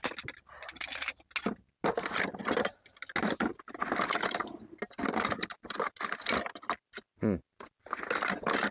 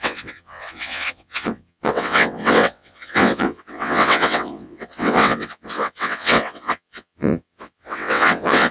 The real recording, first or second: first